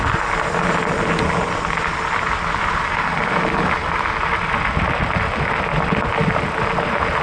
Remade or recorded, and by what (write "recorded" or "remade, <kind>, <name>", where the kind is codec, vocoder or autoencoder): recorded